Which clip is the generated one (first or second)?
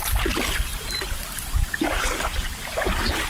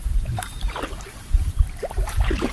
second